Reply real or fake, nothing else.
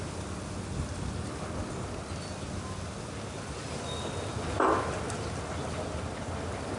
real